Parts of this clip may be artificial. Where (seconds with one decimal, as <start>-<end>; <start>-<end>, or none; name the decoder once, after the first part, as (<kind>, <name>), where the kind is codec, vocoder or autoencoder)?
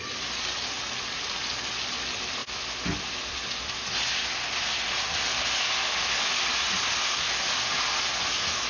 none